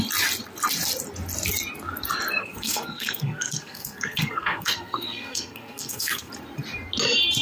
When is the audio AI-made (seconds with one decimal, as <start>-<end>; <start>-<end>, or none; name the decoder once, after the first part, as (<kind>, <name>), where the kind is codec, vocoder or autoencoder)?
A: 2.4-6.3 (codec, SNAC)